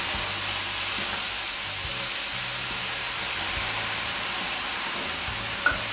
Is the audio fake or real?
real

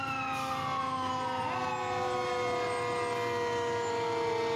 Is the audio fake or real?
real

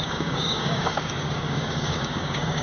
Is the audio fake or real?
fake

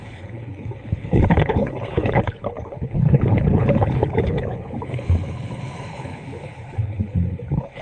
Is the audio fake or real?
fake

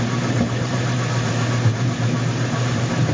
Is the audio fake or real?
fake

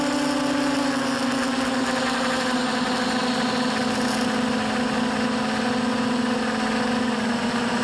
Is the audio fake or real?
real